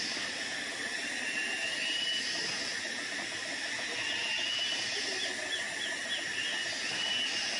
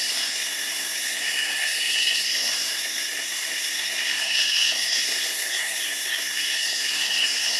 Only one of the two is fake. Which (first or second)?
second